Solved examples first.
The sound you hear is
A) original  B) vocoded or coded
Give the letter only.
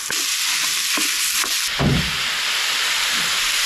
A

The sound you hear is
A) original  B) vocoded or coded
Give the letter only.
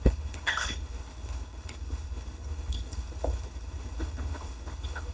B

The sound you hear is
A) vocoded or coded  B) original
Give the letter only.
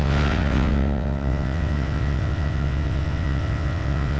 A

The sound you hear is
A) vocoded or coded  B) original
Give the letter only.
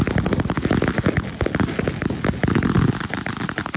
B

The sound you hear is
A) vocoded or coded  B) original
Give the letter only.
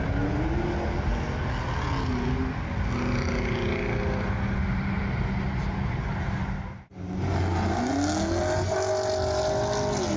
B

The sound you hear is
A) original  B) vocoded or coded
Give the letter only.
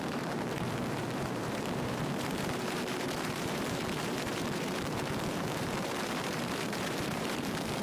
B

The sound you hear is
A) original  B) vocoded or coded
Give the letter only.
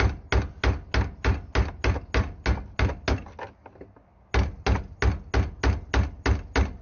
A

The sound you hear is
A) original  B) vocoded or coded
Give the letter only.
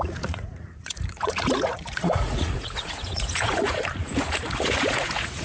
B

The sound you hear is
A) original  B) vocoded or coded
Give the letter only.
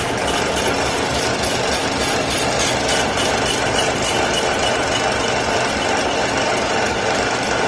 A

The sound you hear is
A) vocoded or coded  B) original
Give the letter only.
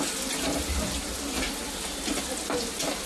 B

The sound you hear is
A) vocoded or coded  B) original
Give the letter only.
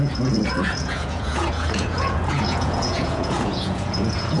A